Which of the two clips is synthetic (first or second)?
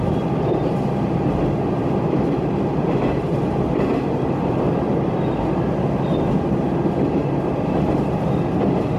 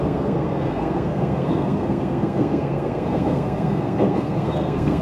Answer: second